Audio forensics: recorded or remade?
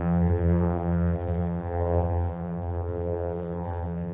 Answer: remade